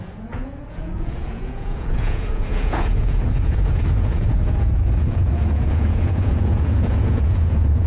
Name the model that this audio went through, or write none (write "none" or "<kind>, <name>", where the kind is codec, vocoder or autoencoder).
vocoder, Vocos